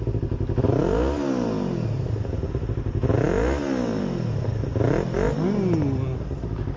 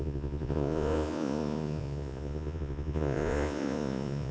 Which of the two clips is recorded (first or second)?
first